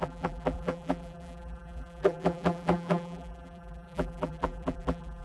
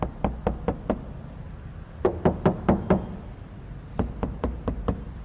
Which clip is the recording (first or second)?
second